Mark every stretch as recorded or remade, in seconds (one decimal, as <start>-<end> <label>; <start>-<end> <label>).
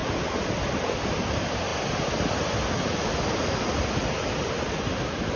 0.0-5.4 recorded